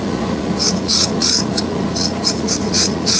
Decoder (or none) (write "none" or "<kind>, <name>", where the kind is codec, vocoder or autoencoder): vocoder, Vocos